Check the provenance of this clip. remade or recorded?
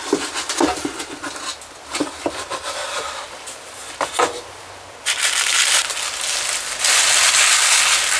recorded